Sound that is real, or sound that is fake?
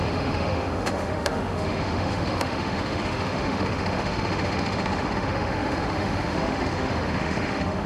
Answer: fake